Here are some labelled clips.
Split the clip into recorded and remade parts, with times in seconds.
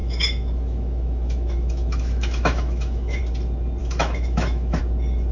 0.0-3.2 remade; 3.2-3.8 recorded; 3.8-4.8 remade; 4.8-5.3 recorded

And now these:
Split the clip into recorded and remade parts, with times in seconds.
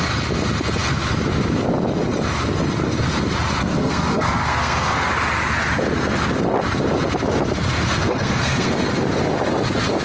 0.0-3.6 recorded; 3.6-5.1 remade; 5.1-8.0 recorded; 8.0-8.7 remade; 8.7-10.0 recorded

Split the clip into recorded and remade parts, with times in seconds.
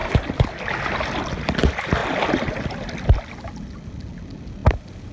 0.0-5.1 recorded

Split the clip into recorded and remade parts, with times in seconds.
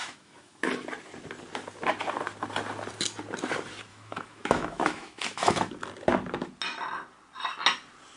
0.0-0.6 remade; 0.6-3.9 recorded; 3.9-5.7 remade; 5.7-8.2 recorded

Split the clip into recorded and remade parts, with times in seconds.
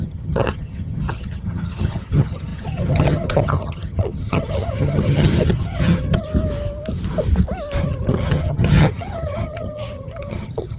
0.0-6.3 remade; 6.3-7.8 recorded; 7.8-10.8 remade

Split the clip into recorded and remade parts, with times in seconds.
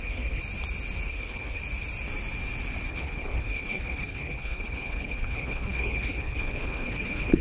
0.0-0.4 remade; 0.4-1.1 recorded; 1.1-1.6 remade; 1.6-2.9 recorded; 2.9-7.4 remade